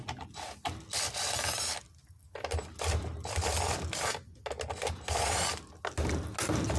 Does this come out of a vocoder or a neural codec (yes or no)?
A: no